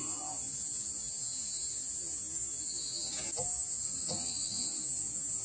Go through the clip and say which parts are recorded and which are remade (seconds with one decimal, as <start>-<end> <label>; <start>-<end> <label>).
0.0-3.8 recorded; 3.8-4.6 remade; 4.6-5.4 recorded